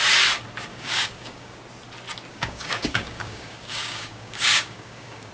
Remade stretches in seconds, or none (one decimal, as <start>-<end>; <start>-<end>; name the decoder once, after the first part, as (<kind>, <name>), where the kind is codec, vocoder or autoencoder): 0.7-1.6 (codec, DAC); 2.3-5.3